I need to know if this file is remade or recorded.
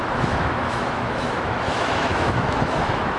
remade